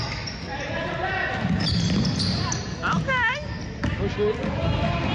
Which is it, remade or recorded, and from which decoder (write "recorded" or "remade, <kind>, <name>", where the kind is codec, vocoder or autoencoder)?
recorded